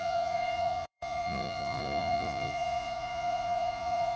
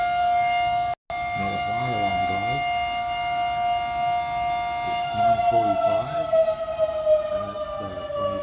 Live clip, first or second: second